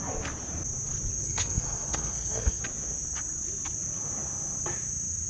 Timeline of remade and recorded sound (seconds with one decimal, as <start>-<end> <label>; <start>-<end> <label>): 0.0-1.2 recorded; 1.2-2.6 remade; 2.6-5.3 recorded